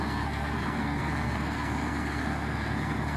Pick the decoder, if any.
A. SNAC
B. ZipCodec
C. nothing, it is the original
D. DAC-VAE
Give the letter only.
A